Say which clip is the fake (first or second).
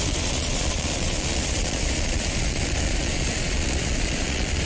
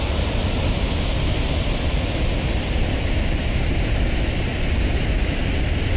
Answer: first